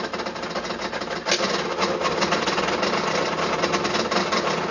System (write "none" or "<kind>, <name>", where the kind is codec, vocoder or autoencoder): none